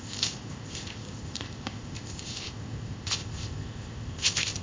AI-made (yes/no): yes